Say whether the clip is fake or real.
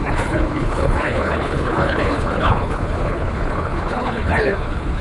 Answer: fake